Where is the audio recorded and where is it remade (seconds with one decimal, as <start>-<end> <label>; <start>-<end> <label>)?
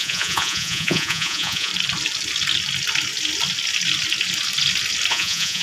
0.0-1.7 remade; 1.7-5.1 recorded; 5.1-5.6 remade